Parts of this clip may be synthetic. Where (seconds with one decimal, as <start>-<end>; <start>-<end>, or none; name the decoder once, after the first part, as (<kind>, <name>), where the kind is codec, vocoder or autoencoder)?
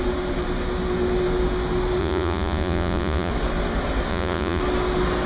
2.0-3.3 (vocoder, Vocos); 4.1-4.6